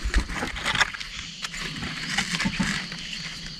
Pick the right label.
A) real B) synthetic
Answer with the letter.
A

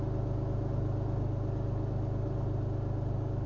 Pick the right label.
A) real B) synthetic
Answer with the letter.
A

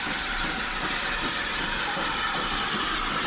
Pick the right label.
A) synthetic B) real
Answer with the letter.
B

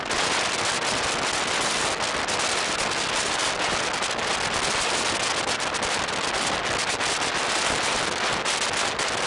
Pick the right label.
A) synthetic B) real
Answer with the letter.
B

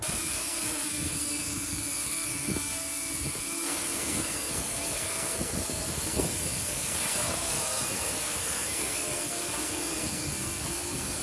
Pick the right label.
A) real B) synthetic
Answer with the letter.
B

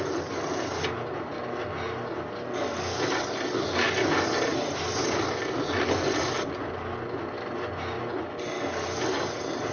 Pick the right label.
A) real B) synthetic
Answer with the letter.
A